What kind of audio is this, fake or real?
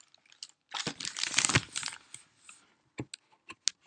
real